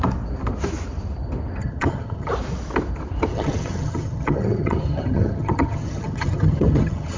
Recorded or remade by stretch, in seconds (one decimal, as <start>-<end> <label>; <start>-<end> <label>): 0.0-1.6 recorded; 1.6-2.3 remade; 2.3-3.3 recorded; 3.3-7.2 remade